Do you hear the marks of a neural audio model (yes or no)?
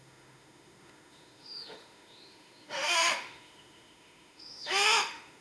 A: yes